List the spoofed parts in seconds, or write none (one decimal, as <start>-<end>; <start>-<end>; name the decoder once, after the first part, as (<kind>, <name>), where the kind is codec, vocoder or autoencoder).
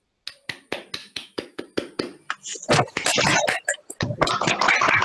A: 1.0-1.6 (autoencoder, DAC-VAE)